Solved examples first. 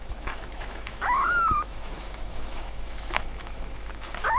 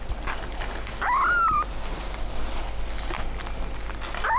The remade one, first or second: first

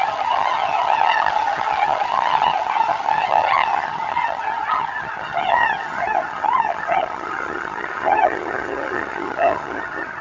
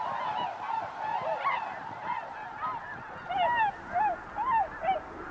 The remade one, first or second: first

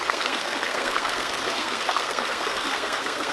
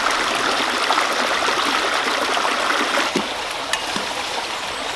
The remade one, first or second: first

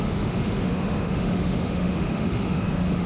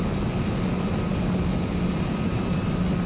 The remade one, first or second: first